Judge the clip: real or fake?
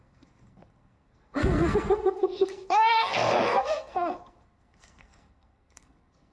fake